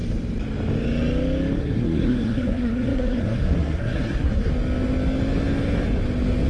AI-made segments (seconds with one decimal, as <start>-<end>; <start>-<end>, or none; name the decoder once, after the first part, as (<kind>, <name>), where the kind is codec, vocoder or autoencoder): 1.6-4.5 (codec, SNAC)

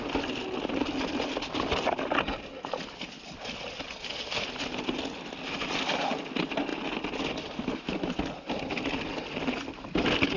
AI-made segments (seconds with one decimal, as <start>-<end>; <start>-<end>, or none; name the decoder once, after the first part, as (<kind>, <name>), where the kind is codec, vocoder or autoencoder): none

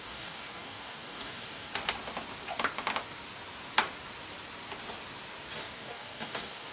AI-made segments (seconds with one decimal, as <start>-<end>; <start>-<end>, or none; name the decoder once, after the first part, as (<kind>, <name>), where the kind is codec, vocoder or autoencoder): 0.0-1.7 (codec, DAC); 5.6-6.7

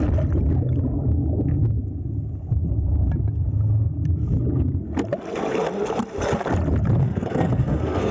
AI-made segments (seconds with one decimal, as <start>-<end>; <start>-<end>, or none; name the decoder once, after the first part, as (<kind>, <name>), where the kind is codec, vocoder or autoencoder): 7.0-8.1 (codec, SNAC)

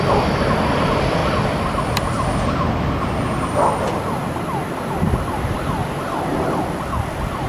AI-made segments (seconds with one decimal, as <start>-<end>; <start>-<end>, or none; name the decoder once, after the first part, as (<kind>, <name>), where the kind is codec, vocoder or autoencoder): 0.0-1.2 (vocoder, BigVGAN v2); 4.9-7.5

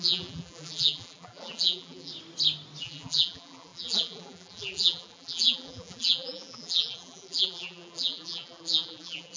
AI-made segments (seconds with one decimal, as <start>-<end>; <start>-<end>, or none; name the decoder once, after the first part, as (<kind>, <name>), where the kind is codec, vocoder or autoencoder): 0.0-2.1 (vocoder, BigVGAN v2); 2.8-9.4

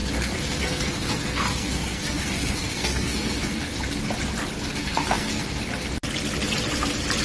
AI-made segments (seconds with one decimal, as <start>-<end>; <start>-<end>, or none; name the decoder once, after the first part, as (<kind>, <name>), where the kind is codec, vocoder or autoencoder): 0.0-3.8 (codec, SNAC); 4.8-5.6